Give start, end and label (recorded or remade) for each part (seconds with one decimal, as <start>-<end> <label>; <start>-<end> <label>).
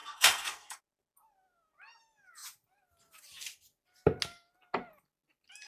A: 0.0-0.8 remade; 0.8-5.7 recorded